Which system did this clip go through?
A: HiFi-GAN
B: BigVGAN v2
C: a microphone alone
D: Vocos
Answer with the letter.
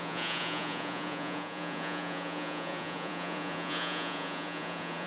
D